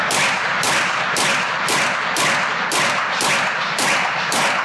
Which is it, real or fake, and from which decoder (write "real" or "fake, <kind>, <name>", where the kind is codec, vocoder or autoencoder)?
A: real